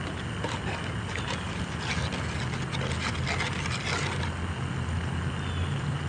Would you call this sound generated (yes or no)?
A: no